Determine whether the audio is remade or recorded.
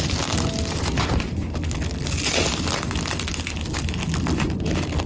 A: recorded